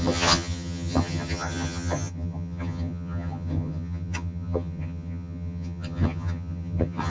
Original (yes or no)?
no